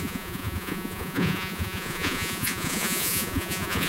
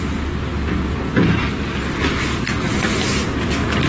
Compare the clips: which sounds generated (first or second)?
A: first